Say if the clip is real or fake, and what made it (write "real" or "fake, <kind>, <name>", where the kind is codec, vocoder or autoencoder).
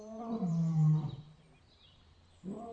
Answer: fake, vocoder, BigVGAN v2